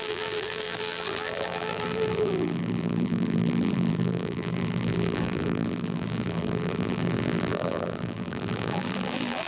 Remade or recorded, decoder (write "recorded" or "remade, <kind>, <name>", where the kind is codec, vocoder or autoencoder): remade, vocoder, BigVGAN v2